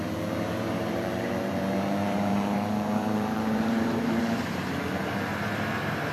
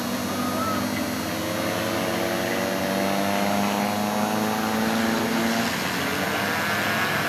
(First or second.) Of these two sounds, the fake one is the first